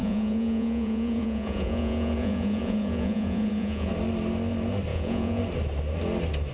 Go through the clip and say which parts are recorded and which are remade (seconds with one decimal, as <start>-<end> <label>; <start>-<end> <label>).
0.0-3.9 remade; 3.9-4.9 recorded; 4.9-5.4 remade; 5.4-6.5 recorded